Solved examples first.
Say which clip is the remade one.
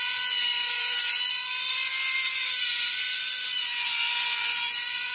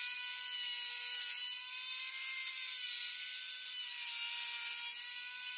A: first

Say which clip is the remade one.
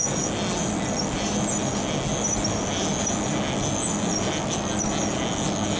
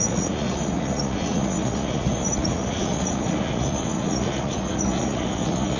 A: second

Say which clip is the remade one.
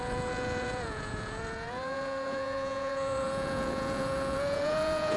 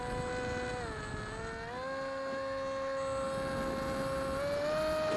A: first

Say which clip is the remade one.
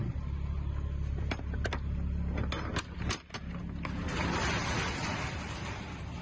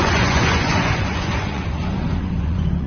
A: second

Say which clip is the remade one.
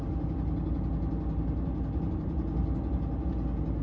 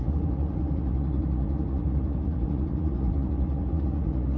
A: second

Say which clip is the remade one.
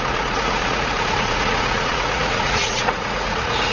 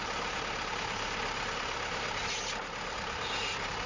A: first